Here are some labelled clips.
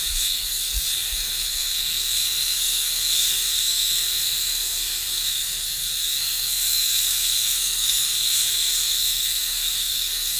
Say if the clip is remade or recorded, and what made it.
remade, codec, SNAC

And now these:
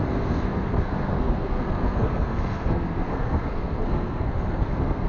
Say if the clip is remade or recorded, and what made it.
remade, codec, SNAC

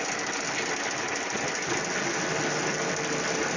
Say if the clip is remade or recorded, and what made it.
recorded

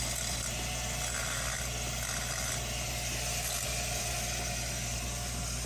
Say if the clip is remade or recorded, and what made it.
recorded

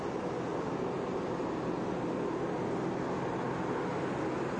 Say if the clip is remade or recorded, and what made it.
recorded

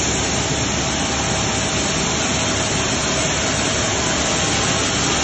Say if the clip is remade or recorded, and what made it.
recorded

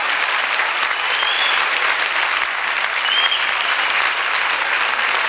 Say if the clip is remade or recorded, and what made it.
recorded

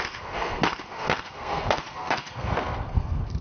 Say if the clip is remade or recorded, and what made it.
remade, codec, SNAC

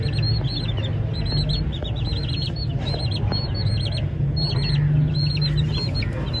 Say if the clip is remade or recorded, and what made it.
recorded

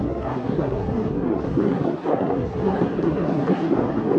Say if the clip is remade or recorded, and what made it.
remade, codec, SNAC